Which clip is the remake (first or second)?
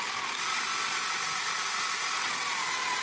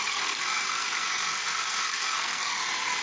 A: second